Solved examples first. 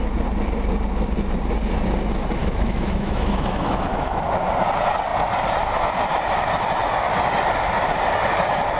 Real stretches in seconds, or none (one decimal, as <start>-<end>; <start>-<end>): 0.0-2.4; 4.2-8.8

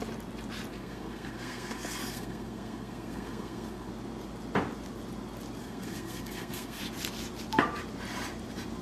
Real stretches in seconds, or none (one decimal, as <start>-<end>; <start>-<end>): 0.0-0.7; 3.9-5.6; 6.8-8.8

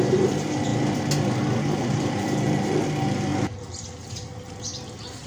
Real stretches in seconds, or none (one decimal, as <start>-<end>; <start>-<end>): 0.7-1.6; 3.3-5.3

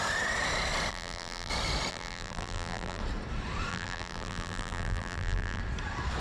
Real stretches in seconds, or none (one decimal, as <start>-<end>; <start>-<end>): 0.0-0.9; 1.5-1.9; 3.0-3.7; 5.6-6.2

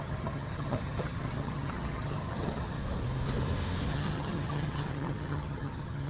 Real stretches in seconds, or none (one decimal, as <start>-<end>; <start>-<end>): 2.8-3.9

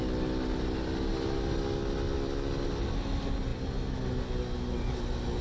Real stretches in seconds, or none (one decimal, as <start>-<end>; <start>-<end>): 0.0-5.4